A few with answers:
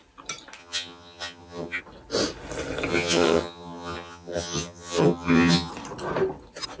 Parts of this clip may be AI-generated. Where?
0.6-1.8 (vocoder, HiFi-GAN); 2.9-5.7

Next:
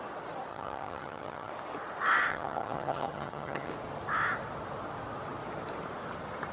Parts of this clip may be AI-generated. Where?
0.5-1.5 (vocoder, HiFi-GAN); 2.3-3.7

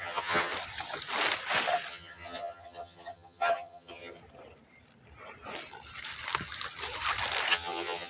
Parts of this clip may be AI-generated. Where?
0.0-0.5 (vocoder, HiFi-GAN); 1.9-4.2; 7.5-8.1

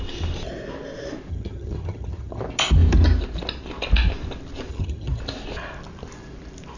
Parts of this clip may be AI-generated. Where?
1.3-2.4 (vocoder, HiFi-GAN); 4.7-5.2